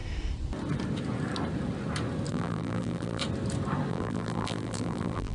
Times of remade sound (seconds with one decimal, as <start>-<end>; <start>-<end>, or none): 2.3-3.2; 3.9-5.3